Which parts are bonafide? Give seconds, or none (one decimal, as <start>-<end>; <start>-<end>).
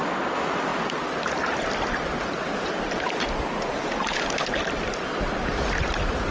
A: 0.0-6.3